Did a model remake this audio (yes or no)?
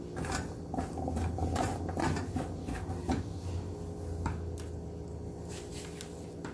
no